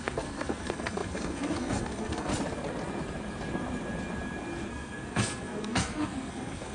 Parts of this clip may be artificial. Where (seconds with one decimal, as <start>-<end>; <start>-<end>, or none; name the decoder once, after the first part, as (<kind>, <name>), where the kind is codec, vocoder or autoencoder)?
0.0-2.3 (codec, SNAC); 4.7-6.7